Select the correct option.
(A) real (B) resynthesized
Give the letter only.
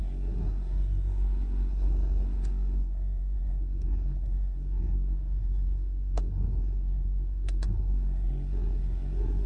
B